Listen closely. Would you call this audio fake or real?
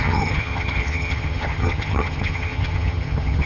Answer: fake